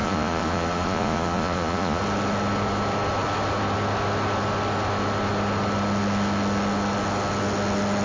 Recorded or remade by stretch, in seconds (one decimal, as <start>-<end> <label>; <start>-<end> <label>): 0.0-2.0 remade; 2.0-8.0 recorded